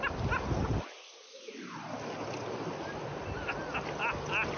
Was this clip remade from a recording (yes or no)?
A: no